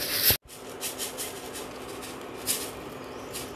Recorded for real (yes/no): yes